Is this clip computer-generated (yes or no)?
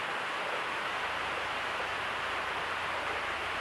yes